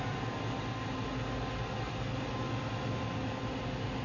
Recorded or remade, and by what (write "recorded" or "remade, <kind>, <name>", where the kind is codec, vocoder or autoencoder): recorded